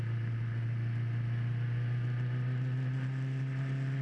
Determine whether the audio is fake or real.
real